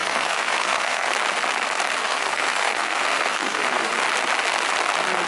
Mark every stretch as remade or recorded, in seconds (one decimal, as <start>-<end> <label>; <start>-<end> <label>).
0.0-1.1 remade; 1.1-2.0 recorded; 2.0-3.9 remade; 3.9-5.3 recorded